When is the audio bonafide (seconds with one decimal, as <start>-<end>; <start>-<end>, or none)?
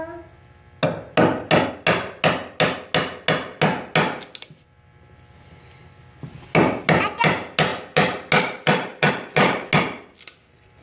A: 0.0-10.8